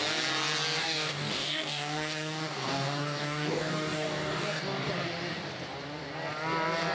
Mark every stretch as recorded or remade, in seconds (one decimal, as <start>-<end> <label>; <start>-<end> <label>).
0.0-0.8 recorded; 0.8-4.9 remade; 4.9-6.9 recorded